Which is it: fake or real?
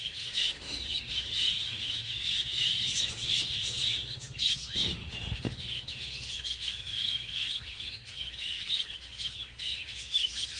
fake